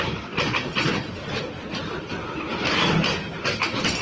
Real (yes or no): yes